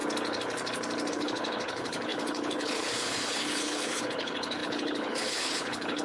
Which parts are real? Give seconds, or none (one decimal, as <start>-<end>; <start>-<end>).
0.0-1.1